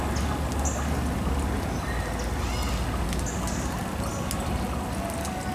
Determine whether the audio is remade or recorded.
recorded